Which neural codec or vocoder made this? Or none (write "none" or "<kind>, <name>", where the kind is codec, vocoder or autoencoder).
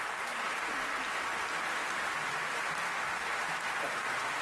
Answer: none